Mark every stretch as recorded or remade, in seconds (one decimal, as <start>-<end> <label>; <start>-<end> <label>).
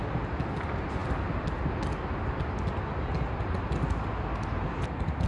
0.0-5.3 recorded